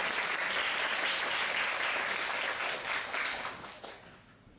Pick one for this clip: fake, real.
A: real